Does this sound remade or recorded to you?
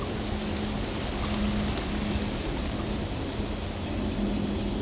recorded